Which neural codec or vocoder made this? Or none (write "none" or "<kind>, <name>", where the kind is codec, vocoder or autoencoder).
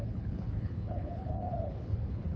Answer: codec, HILCodec